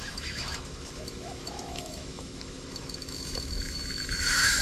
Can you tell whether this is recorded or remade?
remade